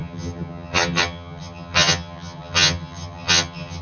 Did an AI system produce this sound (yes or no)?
yes